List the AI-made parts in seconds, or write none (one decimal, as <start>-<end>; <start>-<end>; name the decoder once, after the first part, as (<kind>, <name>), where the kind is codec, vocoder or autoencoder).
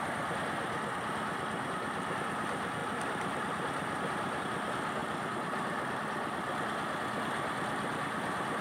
2.8-4.4 (vocoder, BigVGAN v2)